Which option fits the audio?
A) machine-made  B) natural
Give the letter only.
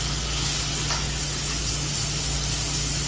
B